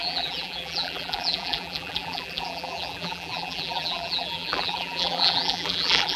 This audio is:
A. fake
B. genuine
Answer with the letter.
A